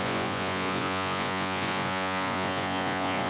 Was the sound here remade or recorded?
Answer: remade